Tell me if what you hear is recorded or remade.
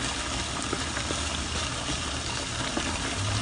recorded